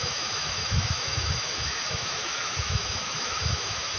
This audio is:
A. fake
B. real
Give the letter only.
A